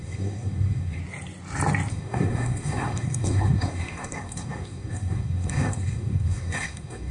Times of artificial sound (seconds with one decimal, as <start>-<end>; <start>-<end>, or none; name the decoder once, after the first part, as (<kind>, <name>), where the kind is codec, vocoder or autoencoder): 0.0-1.0 (codec, SNAC); 1.9-7.1